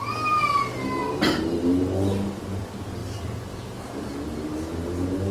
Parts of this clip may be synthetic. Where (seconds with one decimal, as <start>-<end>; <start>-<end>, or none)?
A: none